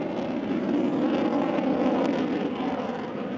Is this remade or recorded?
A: recorded